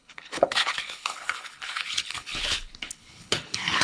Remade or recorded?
remade